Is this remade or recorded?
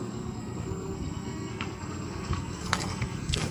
remade